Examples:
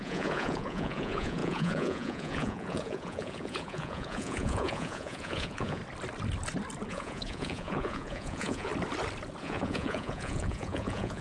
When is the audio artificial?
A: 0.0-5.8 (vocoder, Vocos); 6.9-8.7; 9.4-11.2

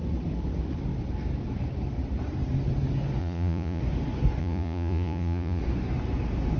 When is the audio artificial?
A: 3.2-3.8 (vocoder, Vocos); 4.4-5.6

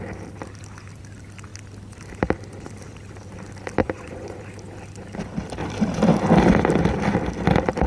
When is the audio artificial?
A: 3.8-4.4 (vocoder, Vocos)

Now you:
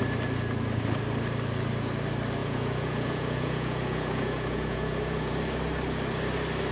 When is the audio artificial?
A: 2.4-5.3 (vocoder, Vocos)

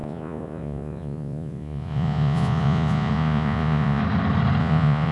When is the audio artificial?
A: 0.0-4.0 (vocoder, Vocos); 4.6-5.1